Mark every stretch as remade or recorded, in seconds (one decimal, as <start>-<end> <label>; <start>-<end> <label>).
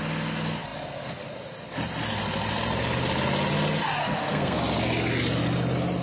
0.0-4.0 recorded; 4.0-4.6 remade; 4.6-6.0 recorded